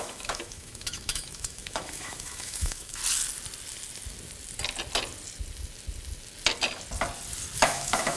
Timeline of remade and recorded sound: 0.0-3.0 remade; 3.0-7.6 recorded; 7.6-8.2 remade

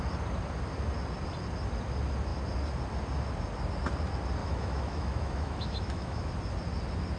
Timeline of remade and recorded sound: 0.0-4.4 recorded; 4.4-6.3 remade; 6.3-7.2 recorded

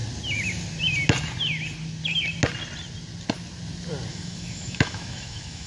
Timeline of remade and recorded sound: 0.0-4.1 recorded; 4.1-5.7 remade